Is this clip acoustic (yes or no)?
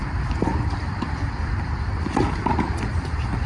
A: no